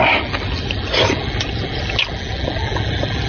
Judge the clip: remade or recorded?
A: recorded